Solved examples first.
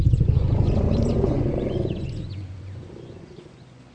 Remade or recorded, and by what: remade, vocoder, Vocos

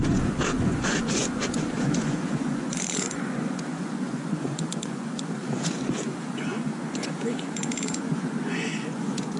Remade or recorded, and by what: remade, vocoder, Vocos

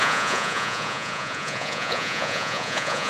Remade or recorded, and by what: remade, vocoder, Vocos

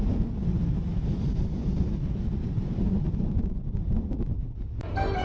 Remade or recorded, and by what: recorded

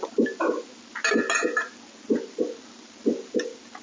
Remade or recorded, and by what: recorded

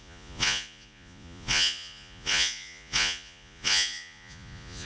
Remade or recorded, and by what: remade, vocoder, Vocos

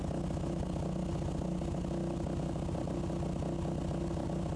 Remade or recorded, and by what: recorded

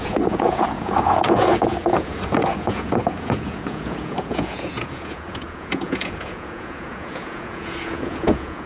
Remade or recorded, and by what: remade, vocoder, Vocos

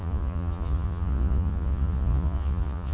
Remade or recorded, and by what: remade, vocoder, Vocos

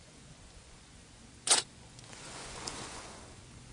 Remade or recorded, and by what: remade, vocoder, Vocos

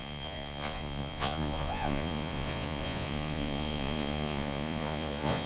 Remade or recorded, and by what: remade, vocoder, Vocos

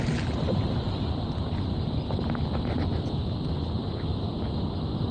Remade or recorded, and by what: recorded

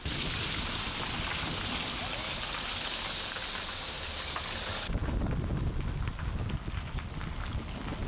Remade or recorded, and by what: recorded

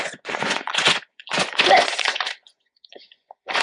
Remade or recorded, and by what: remade, vocoder, Vocos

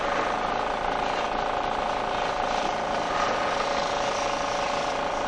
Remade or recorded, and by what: recorded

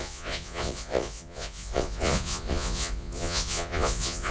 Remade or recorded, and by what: remade, vocoder, Vocos